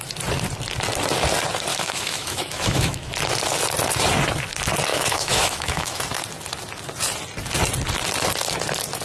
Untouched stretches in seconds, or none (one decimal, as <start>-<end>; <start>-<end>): 0.0-1.7; 3.1-4.9; 6.0-9.0